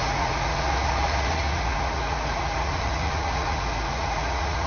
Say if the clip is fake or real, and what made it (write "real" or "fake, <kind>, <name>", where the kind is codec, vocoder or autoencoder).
fake, vocoder, Vocos